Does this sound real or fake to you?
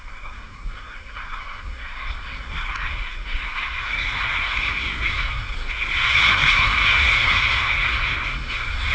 fake